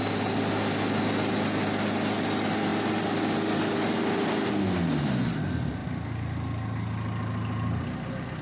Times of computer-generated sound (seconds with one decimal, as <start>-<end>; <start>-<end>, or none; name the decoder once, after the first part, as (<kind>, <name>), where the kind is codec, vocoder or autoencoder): none